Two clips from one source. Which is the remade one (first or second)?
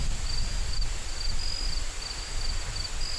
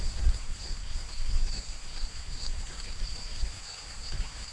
second